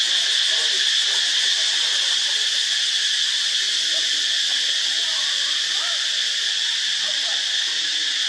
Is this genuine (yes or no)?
yes